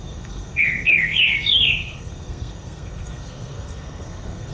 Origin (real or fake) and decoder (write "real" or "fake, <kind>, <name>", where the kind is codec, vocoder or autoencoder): fake, codec, SNAC